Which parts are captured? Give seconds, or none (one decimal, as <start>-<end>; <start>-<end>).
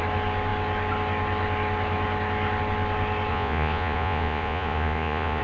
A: 0.0-3.3